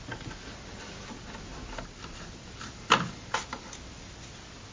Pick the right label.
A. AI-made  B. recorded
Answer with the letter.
B